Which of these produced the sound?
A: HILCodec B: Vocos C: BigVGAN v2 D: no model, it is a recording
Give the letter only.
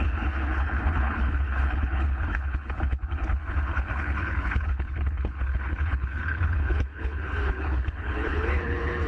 A